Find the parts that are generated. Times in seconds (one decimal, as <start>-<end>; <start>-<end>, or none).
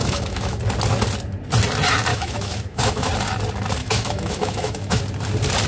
0.0-0.6; 2.1-3.1; 3.8-5.0